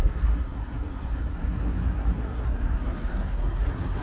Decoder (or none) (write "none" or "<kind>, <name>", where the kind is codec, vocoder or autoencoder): codec, SNAC